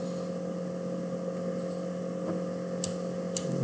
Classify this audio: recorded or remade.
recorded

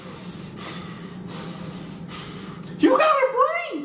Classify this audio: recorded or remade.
recorded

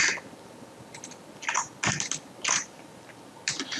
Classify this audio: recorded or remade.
recorded